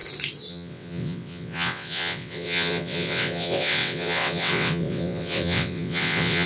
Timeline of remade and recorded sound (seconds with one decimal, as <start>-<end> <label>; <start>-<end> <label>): 0.0-0.5 recorded; 0.5-6.5 remade